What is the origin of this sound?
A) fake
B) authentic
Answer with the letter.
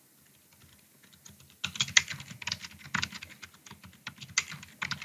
B